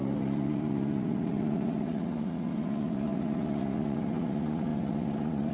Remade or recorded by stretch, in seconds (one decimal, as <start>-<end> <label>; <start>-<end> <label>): 0.0-5.5 remade